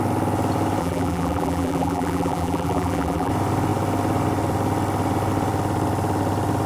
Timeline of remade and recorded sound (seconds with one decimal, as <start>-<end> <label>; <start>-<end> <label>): 0.0-0.8 recorded; 0.8-3.3 remade; 3.3-6.7 recorded